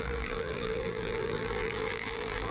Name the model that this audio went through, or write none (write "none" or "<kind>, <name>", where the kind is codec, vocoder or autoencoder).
vocoder, BigVGAN v2